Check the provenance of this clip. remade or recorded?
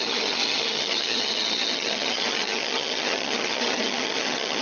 remade